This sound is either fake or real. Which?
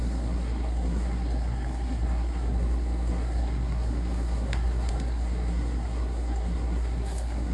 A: fake